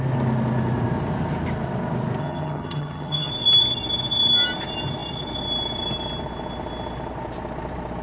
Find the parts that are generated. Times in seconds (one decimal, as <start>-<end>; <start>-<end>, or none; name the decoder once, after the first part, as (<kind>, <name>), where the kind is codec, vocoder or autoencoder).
2.2-3.3 (vocoder, HiFi-GAN)